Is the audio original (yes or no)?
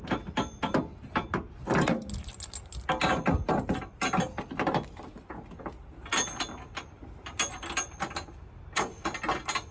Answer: yes